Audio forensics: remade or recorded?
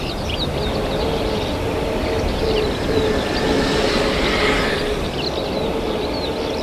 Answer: recorded